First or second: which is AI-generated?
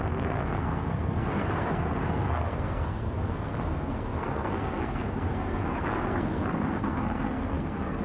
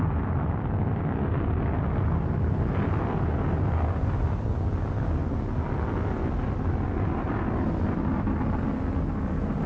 first